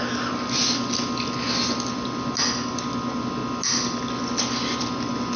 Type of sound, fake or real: real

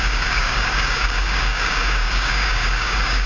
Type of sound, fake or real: fake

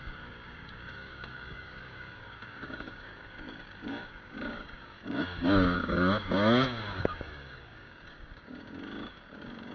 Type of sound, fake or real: fake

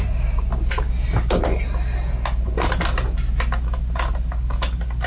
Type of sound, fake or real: real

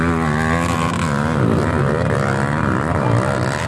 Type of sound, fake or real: real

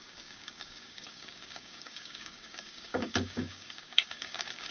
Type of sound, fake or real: fake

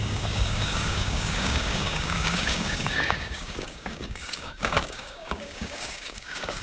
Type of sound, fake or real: fake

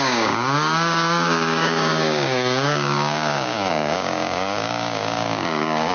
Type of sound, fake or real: fake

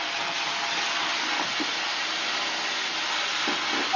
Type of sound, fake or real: real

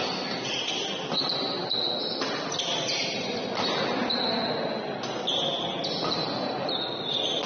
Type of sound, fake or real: real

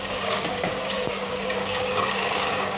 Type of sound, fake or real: fake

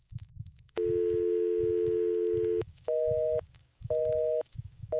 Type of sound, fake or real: fake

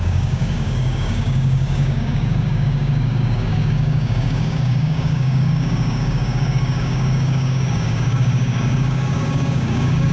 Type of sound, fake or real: fake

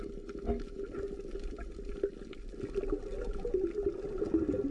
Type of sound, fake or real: real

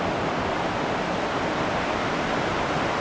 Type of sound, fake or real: real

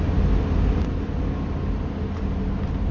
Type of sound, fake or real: real